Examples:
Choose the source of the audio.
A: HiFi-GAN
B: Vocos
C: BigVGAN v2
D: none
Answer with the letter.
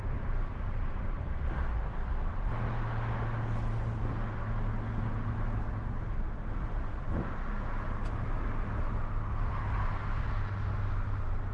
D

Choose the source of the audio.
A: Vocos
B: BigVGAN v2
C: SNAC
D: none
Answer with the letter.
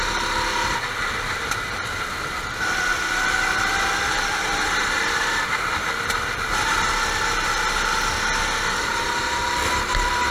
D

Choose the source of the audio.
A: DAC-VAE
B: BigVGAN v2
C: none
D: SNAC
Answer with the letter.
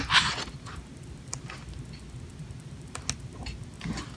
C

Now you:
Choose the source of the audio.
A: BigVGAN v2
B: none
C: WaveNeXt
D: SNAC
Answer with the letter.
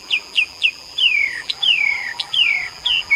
A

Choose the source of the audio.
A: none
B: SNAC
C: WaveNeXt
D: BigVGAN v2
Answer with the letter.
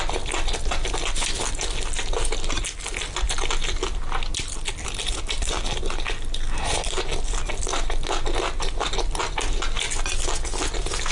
A